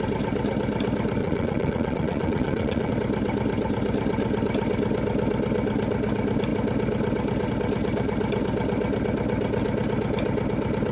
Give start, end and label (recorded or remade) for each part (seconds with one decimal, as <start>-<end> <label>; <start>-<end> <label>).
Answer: 0.0-1.2 recorded; 1.2-2.9 remade; 2.9-10.9 recorded